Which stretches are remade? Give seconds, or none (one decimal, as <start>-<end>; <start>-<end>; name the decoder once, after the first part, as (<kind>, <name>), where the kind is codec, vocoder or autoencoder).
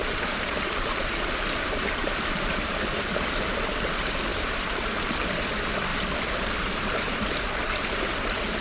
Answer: 0.0-3.6 (vocoder, BigVGAN v2); 4.3-5.4; 5.9-7.4